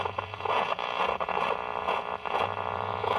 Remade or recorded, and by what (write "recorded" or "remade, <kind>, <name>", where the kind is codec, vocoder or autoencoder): remade, vocoder, Vocos